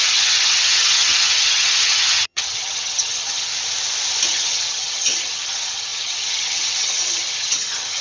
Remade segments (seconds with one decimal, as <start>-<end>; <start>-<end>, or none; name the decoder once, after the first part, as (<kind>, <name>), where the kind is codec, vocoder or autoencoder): 0.0-3.5 (vocoder, HiFi-GAN); 4.3-8.0